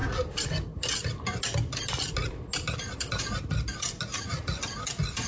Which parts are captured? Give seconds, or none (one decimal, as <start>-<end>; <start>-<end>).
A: 0.0-5.3